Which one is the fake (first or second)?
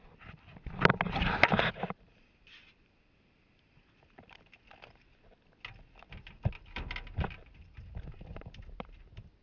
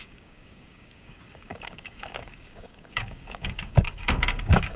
second